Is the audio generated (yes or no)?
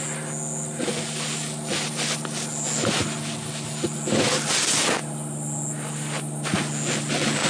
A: no